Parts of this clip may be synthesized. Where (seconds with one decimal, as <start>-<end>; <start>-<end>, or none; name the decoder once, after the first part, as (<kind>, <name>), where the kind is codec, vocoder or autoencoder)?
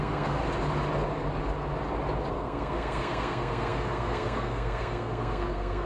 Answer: 0.0-0.4 (codec, SNAC); 2.3-5.9